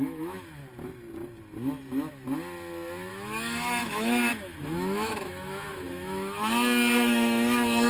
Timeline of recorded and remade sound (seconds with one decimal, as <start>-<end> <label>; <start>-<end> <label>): 0.0-0.6 remade; 0.6-3.1 recorded; 3.1-7.9 remade